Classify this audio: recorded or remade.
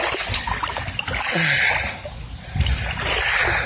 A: recorded